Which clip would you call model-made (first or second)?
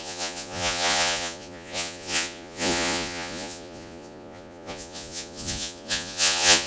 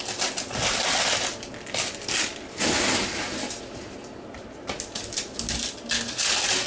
first